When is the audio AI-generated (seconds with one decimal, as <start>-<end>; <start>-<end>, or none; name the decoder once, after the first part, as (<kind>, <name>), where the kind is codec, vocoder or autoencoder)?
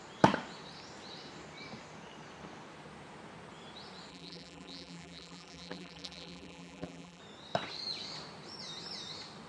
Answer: 4.1-7.2 (vocoder, BigVGAN v2)